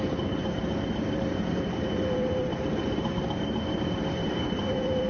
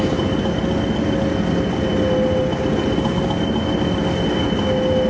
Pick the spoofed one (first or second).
first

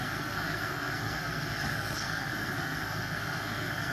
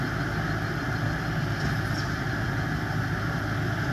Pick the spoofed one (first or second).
first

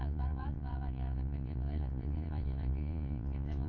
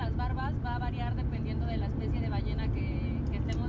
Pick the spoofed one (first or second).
first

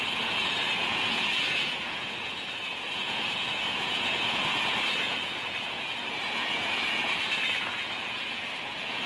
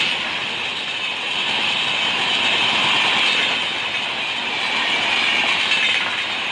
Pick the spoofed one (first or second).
first